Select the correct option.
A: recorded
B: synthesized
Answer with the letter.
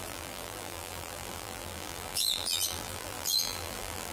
B